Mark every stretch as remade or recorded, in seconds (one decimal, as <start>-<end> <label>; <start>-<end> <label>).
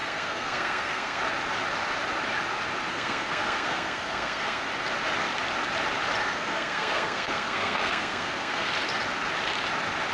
0.0-1.2 remade; 1.2-2.9 recorded; 2.9-4.6 remade; 4.6-6.2 recorded; 6.2-8.7 remade; 8.7-10.1 recorded